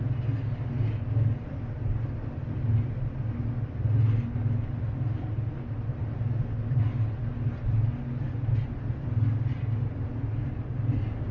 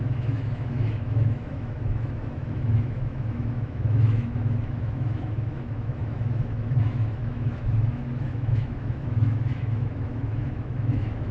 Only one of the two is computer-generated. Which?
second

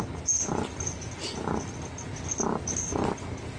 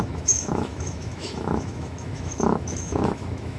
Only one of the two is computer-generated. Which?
second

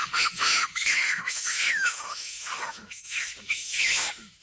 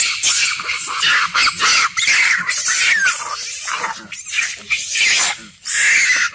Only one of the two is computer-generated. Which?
first